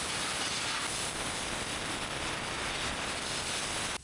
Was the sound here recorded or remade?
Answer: recorded